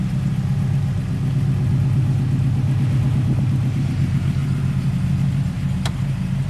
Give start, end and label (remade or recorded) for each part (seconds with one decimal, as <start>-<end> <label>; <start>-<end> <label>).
0.0-6.5 recorded